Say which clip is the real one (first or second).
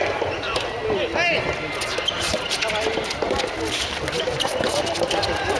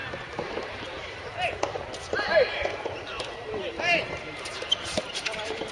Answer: first